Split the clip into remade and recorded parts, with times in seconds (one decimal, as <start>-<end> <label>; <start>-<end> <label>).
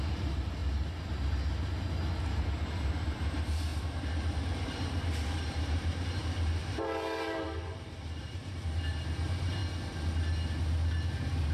0.0-0.6 remade; 0.6-2.2 recorded; 2.2-9.6 remade; 9.6-11.1 recorded; 11.1-11.5 remade